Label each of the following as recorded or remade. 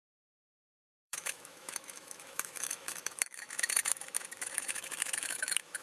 remade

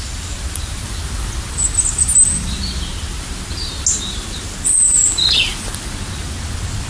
recorded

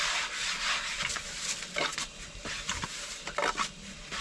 recorded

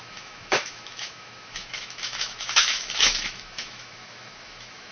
remade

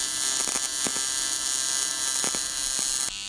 recorded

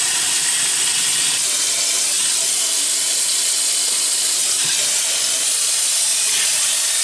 recorded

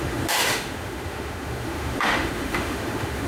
remade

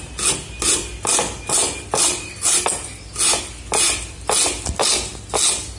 recorded